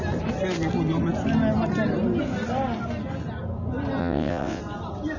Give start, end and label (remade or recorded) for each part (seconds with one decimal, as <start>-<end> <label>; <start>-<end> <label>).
0.0-4.0 recorded; 4.0-4.6 remade; 4.6-5.2 recorded